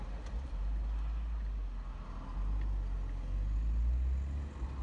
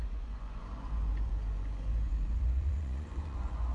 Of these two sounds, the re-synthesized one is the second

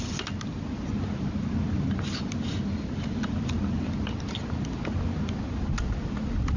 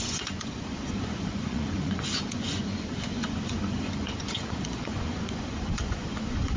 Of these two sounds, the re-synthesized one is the second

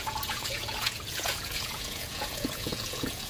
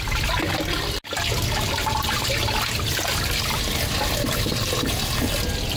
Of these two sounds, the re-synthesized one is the first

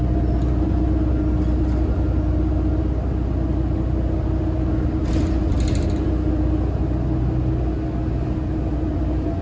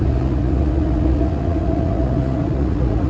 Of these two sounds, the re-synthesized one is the second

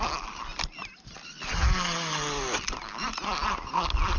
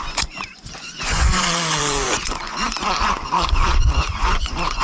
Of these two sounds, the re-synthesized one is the second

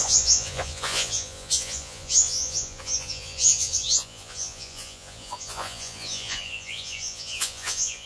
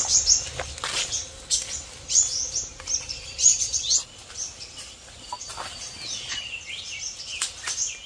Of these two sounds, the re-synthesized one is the first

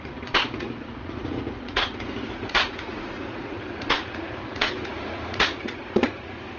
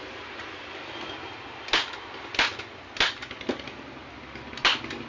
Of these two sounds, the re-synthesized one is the first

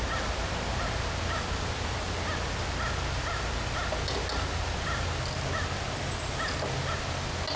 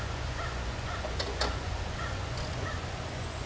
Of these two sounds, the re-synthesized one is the second